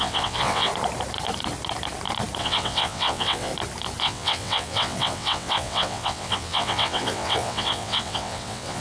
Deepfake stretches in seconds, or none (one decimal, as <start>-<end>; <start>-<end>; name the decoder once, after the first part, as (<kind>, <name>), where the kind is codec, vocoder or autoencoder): 0.0-0.7 (vocoder, WaveNeXt); 2.4-3.5; 4.0-8.8